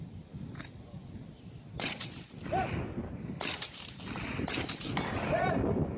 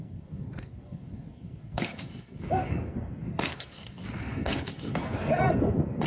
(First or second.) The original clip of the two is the first